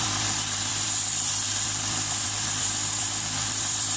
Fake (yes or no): yes